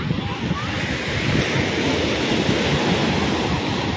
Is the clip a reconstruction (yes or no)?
no